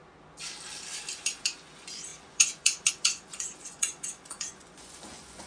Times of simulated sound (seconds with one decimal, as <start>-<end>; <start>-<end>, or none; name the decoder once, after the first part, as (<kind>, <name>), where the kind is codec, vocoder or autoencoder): 1.1-5.5 (vocoder, Vocos)